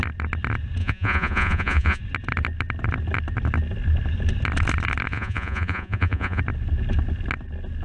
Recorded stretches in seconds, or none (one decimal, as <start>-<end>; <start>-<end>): 0.0-0.8; 2.0-5.1; 6.4-7.8